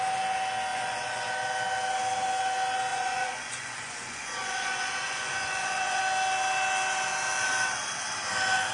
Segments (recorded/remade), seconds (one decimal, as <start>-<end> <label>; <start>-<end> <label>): 0.0-0.7 recorded; 0.7-1.3 remade; 1.3-2.9 recorded; 2.9-6.0 remade; 6.0-8.7 recorded